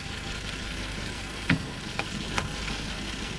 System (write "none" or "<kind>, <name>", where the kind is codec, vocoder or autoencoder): codec, SNAC